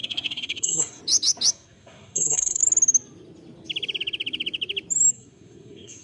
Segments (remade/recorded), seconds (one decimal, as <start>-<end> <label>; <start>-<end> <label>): 0.0-1.0 remade; 1.0-1.5 recorded; 1.5-2.6 remade; 2.6-5.1 recorded; 5.1-6.0 remade